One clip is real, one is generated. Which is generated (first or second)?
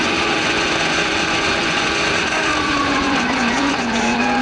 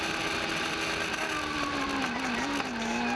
first